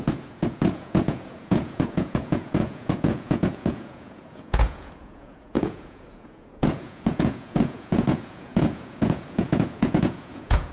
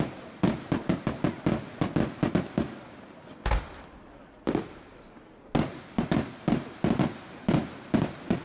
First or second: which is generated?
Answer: first